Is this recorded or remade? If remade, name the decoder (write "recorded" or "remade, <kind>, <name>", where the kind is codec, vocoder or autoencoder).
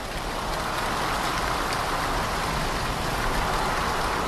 recorded